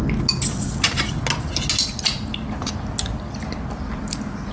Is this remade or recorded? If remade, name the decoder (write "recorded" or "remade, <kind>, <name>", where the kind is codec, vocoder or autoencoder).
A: recorded